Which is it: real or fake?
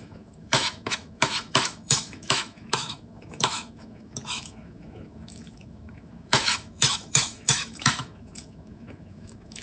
fake